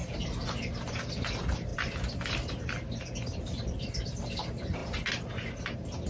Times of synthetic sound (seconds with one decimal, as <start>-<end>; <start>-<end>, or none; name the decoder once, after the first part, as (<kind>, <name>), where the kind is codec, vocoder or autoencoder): none